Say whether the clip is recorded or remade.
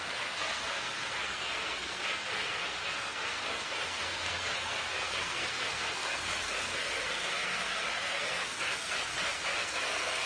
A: remade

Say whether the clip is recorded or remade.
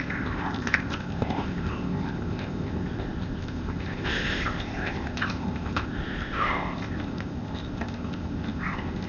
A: remade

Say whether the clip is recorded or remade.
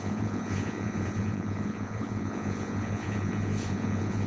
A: remade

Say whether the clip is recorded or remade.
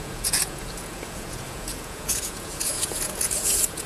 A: remade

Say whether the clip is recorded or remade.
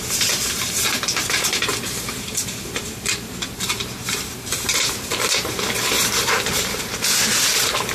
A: remade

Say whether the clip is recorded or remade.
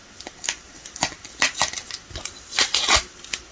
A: recorded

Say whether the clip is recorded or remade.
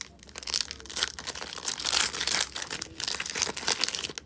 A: recorded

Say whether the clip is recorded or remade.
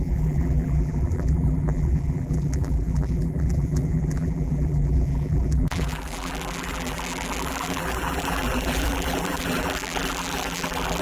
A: remade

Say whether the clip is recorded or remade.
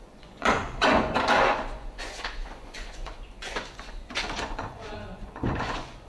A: remade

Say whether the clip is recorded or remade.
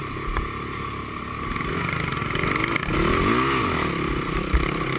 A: recorded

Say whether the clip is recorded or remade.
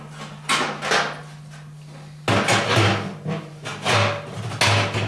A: recorded